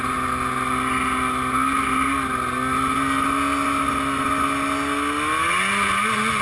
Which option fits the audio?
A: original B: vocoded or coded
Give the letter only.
A